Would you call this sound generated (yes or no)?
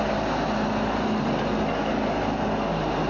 no